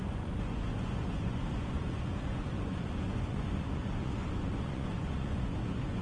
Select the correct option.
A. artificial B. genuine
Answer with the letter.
A